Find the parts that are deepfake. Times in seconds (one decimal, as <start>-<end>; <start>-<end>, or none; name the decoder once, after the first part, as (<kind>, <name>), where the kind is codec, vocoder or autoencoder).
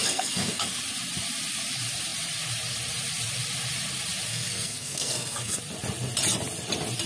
0.0-0.7 (codec, SNAC); 4.3-5.6